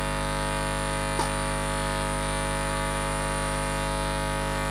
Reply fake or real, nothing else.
fake